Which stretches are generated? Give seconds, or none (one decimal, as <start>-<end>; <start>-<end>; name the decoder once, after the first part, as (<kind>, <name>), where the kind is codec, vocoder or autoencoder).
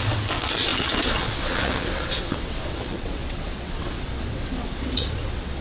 0.0-5.6 (vocoder, WaveNeXt)